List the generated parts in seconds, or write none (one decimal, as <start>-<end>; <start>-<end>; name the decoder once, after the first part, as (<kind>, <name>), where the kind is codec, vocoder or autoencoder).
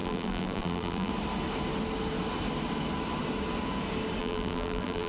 0.0-1.1 (vocoder, BigVGAN v2); 4.2-5.1